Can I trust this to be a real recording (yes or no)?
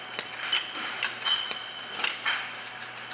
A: yes